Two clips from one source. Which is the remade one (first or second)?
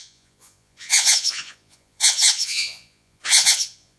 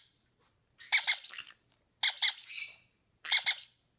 first